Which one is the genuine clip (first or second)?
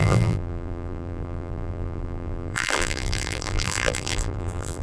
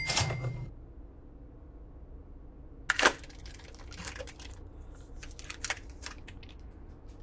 second